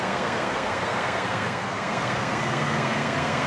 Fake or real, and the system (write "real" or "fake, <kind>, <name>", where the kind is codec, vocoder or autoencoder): fake, codec, SNAC